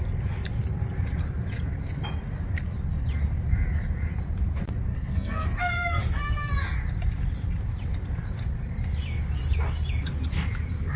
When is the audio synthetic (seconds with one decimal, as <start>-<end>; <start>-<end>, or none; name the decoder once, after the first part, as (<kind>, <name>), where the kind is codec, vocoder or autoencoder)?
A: 4.9-6.5 (codec, SNAC)